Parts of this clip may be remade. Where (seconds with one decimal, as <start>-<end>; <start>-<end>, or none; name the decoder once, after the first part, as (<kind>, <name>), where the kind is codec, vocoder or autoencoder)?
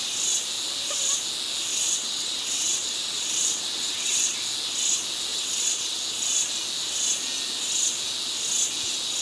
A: 1.7-4.4 (vocoder, WaveNeXt); 5.3-6.0